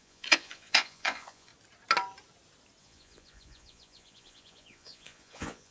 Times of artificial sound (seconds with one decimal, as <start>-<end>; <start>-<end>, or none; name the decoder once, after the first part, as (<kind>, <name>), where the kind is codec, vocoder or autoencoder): 0.0-1.5 (vocoder, Vocos); 2.8-5.7